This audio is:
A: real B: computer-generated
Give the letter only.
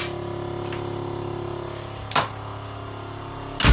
A